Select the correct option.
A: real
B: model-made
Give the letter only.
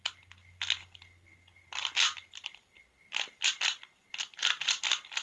A